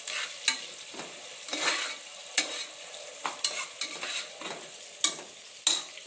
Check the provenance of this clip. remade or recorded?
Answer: recorded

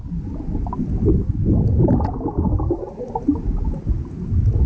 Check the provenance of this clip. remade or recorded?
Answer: recorded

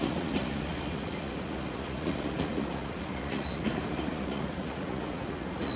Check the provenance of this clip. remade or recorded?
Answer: remade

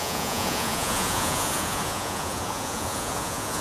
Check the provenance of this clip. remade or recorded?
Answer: remade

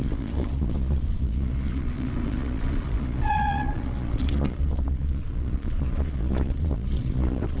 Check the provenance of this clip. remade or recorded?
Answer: remade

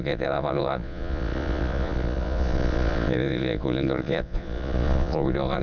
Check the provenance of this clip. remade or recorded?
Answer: remade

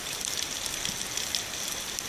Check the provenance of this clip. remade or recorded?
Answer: recorded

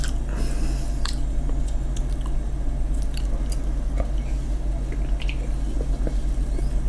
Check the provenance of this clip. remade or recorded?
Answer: recorded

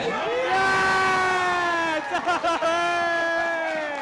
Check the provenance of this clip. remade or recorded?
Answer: recorded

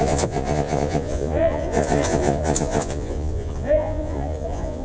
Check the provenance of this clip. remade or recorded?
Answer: remade